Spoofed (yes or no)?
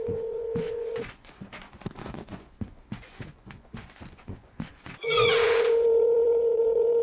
yes